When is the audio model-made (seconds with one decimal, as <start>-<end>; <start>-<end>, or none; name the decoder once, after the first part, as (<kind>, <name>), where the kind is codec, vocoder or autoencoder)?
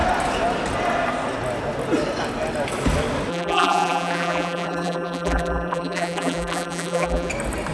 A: 3.3-7.3 (vocoder, BigVGAN v2)